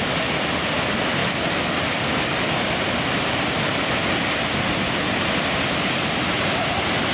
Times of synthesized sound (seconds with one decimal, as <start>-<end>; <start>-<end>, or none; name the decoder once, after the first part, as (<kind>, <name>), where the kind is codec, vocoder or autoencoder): none

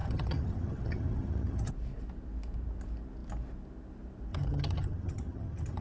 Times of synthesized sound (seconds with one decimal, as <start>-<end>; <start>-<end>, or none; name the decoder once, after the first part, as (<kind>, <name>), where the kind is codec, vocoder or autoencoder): 0.0-1.7 (vocoder, HiFi-GAN); 4.3-5.8

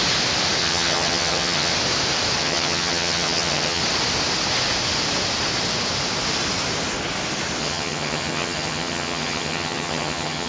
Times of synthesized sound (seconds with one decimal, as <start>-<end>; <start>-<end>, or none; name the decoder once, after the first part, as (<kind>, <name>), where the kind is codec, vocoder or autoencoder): 0.6-1.7 (vocoder, HiFi-GAN); 2.4-3.8; 7.6-10.5

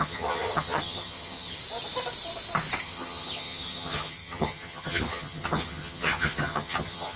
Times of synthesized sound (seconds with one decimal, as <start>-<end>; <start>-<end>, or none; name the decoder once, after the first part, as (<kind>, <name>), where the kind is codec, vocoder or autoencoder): 0.0-1.6 (vocoder, HiFi-GAN); 2.8-7.2